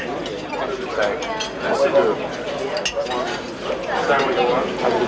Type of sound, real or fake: real